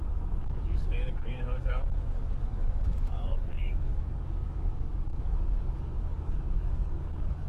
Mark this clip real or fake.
fake